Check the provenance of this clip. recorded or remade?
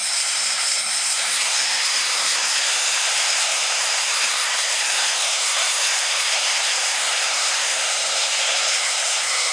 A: remade